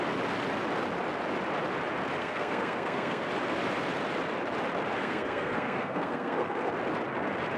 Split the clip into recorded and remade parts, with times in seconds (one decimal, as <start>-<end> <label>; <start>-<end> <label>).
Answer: 0.0-2.2 recorded; 2.2-3.3 remade; 3.3-5.0 recorded; 5.0-6.7 remade; 6.7-7.6 recorded